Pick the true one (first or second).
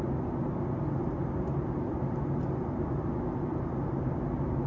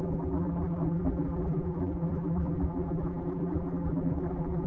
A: first